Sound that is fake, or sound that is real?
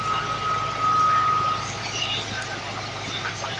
real